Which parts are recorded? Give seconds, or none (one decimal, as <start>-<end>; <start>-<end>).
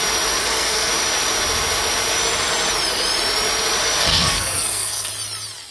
0.0-0.4; 0.9-4.1; 5.1-5.7